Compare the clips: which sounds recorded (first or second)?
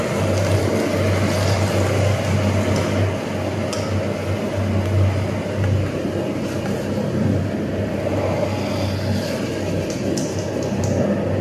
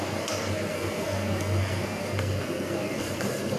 first